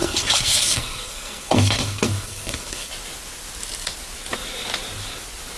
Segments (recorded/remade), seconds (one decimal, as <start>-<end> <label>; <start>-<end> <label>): 0.0-2.9 remade; 2.9-5.6 recorded